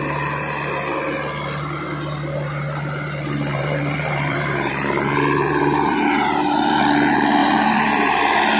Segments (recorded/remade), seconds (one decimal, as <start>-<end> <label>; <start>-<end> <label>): 0.0-3.5 recorded; 3.5-6.8 remade; 6.8-7.4 recorded; 7.4-8.2 remade; 8.2-8.6 recorded